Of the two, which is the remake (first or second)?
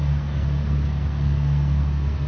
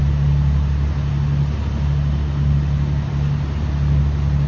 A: first